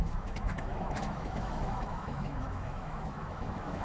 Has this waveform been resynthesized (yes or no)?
yes